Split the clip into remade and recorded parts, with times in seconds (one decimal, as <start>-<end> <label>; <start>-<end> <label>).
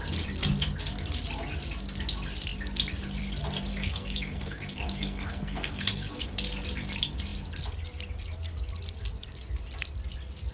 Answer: 0.0-3.7 recorded; 3.7-6.3 remade; 6.3-10.5 recorded